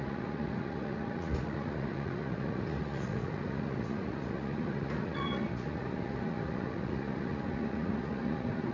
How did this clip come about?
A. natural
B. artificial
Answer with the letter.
B